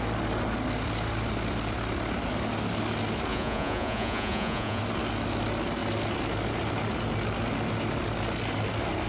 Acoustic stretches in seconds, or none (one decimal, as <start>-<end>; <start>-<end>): 0.0-3.3; 4.8-9.1